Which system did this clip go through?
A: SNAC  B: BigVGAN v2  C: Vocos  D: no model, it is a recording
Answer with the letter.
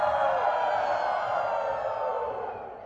D